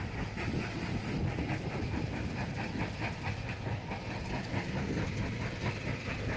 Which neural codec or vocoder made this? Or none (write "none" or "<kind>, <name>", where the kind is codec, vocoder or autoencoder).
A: none